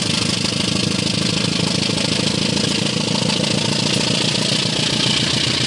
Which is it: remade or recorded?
recorded